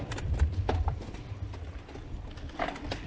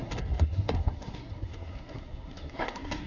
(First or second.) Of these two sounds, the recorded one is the first